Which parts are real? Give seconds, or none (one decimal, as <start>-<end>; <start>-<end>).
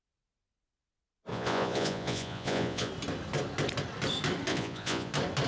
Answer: 0.0-1.3; 2.9-4.5; 5.1-5.5